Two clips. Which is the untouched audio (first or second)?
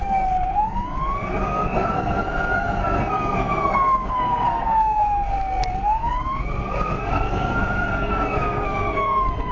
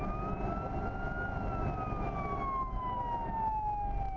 second